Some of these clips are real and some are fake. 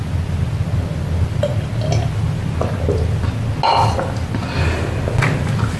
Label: real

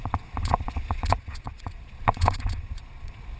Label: fake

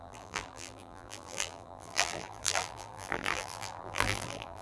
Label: fake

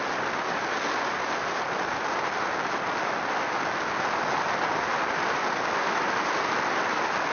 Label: real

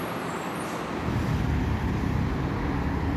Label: real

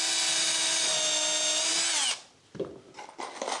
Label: real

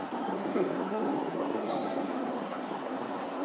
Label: fake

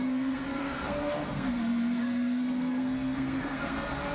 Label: fake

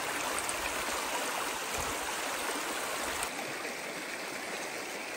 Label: real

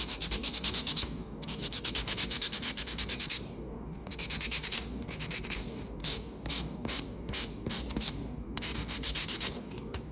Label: fake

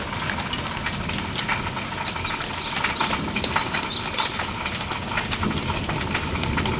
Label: real